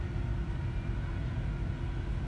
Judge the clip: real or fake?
real